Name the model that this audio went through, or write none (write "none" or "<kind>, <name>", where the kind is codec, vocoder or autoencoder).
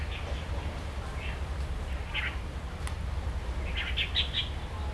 none